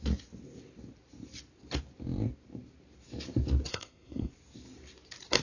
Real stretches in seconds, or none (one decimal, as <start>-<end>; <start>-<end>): 0.0-3.7; 4.3-5.4

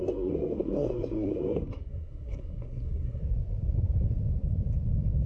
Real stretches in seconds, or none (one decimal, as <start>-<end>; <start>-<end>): 3.2-5.3

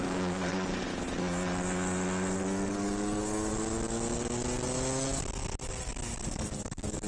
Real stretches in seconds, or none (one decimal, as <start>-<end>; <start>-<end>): 0.5-2.7; 3.5-6.3

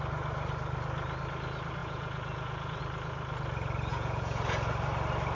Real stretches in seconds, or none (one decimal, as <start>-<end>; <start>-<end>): 0.0-1.8; 2.8-3.9; 4.7-5.3